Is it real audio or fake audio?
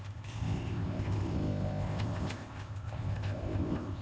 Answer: fake